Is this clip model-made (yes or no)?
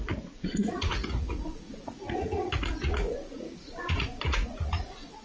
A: yes